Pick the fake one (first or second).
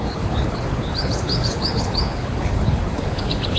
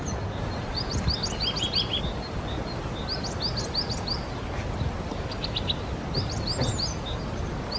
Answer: first